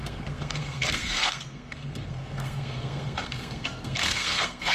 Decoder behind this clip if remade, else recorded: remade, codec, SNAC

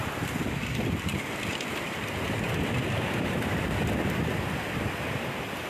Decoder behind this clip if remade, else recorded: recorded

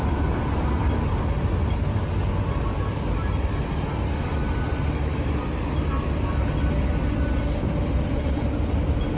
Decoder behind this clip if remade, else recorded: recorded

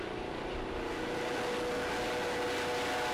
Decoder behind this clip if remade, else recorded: recorded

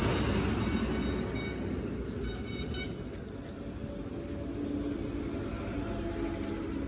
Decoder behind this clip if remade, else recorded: recorded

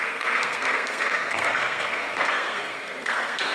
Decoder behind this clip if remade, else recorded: remade, codec, SNAC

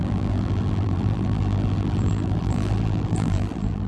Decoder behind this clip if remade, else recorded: remade, vocoder, BigVGAN v2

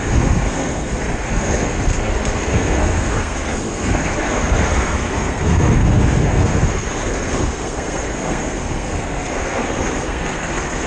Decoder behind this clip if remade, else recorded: remade, codec, SNAC